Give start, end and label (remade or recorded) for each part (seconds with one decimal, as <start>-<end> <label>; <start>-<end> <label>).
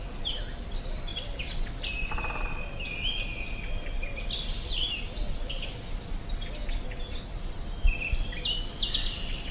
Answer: 0.0-9.5 recorded